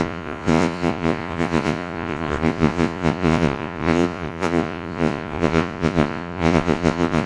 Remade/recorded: remade